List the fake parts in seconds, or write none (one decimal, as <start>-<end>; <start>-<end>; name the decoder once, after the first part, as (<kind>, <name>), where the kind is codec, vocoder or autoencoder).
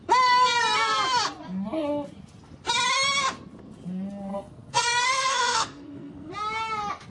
4.3-6.3 (codec, SNAC)